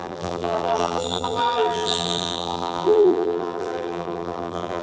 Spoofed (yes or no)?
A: yes